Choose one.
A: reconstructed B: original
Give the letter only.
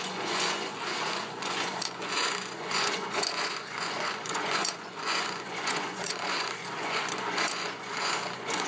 A